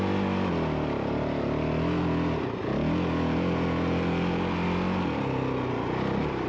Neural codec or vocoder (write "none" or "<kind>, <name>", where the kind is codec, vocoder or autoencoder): none